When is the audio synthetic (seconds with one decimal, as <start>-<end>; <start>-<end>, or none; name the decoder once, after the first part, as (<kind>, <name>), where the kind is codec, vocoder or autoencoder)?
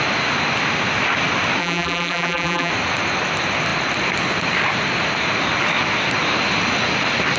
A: 1.6-2.7 (vocoder, BigVGAN v2)